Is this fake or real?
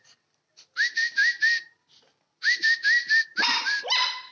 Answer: real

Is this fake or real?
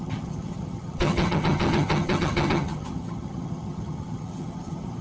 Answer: fake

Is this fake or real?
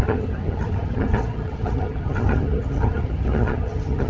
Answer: fake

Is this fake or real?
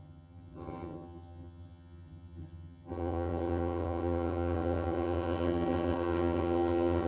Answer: fake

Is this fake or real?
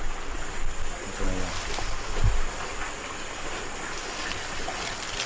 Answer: real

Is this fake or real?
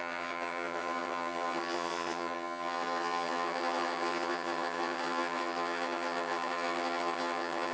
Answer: fake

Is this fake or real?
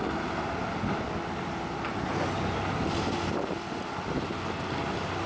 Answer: real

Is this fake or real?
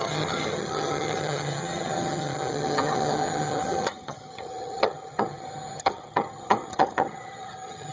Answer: fake